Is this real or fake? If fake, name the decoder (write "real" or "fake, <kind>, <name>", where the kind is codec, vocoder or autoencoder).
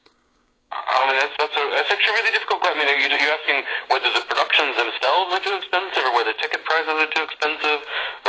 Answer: fake, codec, DAC